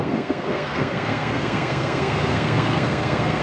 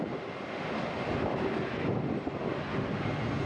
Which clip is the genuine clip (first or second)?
second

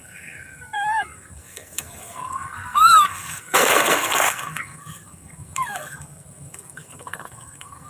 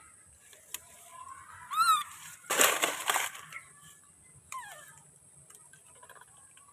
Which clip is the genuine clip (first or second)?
second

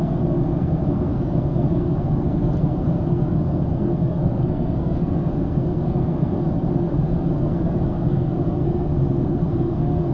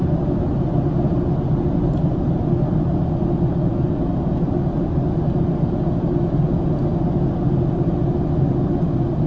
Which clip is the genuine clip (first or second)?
second